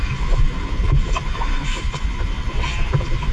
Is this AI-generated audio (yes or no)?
yes